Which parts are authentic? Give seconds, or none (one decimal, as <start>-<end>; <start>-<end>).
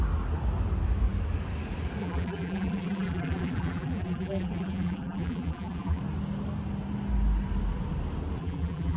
0.0-2.0; 6.0-8.4